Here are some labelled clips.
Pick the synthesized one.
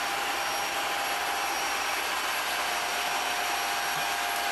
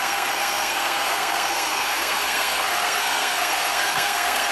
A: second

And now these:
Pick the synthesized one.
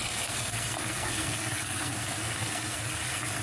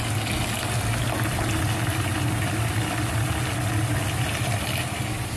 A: first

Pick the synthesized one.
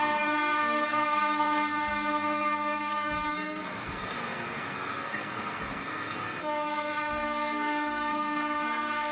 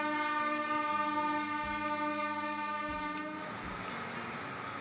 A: first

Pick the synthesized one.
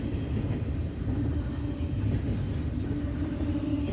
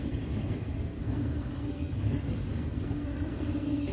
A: second